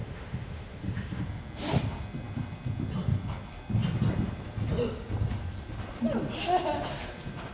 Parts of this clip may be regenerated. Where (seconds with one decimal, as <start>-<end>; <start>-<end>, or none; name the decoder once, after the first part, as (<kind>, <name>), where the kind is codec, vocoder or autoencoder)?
0.0-1.2 (autoencoder, DAC-VAE)